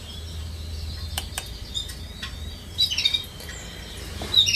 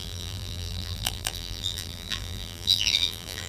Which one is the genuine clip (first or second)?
first